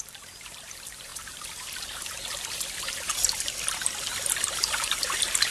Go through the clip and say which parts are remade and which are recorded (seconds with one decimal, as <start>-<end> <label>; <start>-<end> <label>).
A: 0.0-1.1 remade; 1.1-4.4 recorded; 4.4-5.5 remade